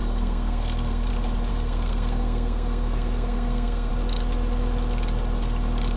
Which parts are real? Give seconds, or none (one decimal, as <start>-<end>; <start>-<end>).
1.1-1.5; 3.9-6.0